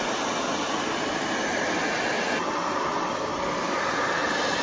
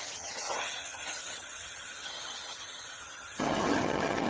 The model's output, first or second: second